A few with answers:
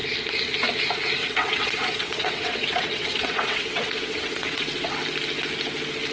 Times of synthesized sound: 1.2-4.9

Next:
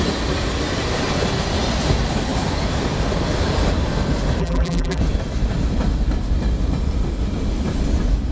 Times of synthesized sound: 4.4-5.0

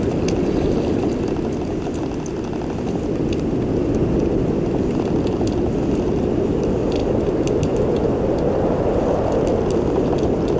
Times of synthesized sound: none

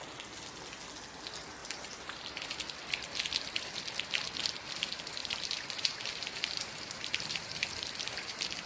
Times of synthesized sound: 1.6-2.2; 5.2-8.7

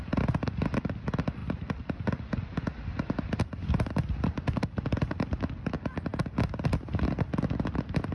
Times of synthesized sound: none

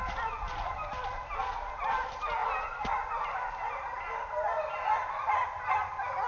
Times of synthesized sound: none

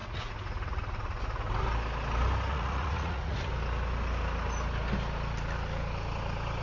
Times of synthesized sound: 0.0-1.2; 2.5-3.5